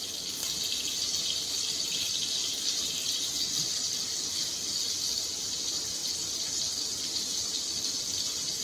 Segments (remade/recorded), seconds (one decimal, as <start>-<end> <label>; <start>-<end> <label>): 0.0-8.6 recorded